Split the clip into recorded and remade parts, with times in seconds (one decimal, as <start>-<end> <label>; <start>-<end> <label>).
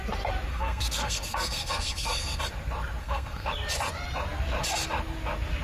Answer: 0.0-0.5 recorded; 0.5-2.4 remade; 2.4-3.0 recorded; 3.0-3.5 remade; 3.5-5.6 recorded